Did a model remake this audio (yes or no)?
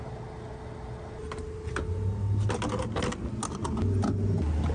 no